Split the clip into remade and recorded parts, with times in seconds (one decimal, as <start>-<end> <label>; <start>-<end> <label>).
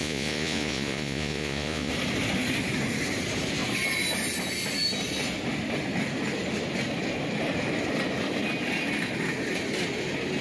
0.0-1.9 remade; 1.9-10.4 recorded